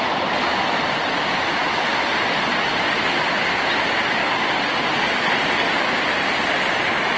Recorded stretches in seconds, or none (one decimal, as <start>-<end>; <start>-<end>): 0.0-7.2